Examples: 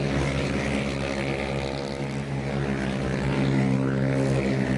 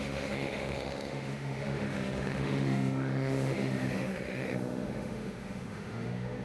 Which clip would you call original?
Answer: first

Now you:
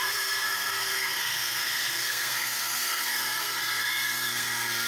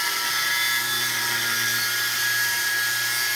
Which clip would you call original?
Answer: second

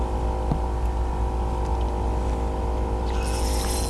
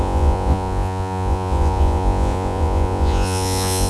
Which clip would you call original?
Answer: first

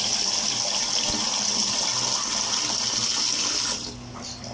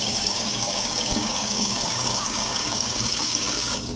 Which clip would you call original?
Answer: first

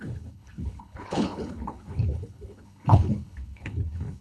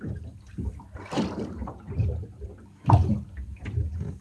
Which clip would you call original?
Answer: second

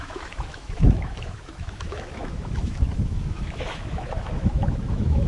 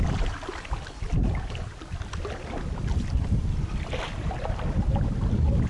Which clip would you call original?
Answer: second